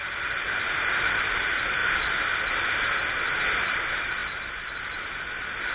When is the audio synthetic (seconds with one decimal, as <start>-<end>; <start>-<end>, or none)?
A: 0.0-1.8; 3.4-5.7